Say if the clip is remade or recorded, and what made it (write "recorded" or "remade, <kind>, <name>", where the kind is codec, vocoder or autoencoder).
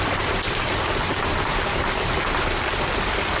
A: recorded